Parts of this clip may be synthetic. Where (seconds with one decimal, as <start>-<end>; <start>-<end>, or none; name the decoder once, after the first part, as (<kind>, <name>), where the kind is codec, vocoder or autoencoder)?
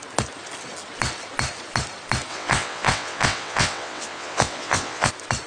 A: 2.3-5.1 (vocoder, WaveNeXt)